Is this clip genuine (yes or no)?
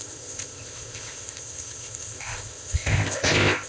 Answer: no